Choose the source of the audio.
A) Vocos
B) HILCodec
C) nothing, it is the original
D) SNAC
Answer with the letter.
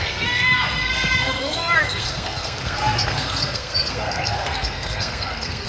D